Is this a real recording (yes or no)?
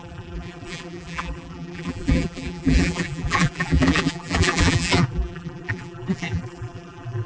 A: no